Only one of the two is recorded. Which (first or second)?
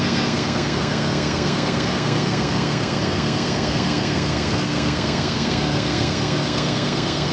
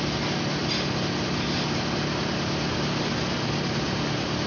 second